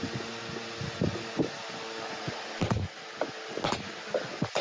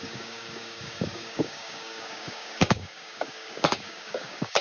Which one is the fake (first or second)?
second